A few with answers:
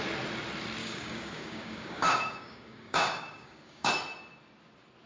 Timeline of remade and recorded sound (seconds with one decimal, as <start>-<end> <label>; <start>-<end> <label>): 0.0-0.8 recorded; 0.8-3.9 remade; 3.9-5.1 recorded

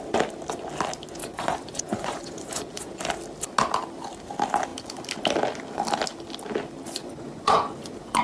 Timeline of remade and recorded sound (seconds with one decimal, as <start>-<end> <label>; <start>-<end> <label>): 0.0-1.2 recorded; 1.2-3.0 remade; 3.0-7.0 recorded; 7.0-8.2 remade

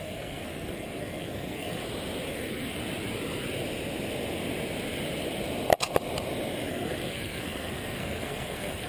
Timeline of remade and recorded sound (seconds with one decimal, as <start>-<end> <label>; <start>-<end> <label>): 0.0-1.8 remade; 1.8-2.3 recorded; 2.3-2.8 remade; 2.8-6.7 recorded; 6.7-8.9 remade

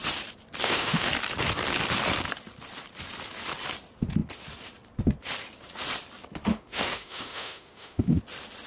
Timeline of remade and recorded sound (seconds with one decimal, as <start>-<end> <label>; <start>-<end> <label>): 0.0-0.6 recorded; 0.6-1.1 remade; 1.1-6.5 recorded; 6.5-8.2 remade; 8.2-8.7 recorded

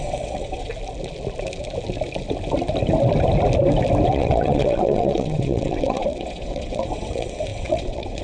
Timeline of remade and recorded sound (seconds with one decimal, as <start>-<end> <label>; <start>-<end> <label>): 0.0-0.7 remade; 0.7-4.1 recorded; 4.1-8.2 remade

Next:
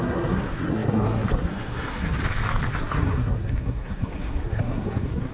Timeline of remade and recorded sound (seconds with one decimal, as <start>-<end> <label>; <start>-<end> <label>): 0.0-2.2 remade; 2.2-2.7 recorded; 2.7-5.3 remade

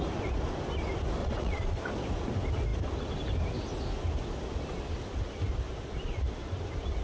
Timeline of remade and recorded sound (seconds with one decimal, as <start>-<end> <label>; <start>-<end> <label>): 0.0-1.2 recorded; 1.2-1.8 remade; 1.8-7.0 recorded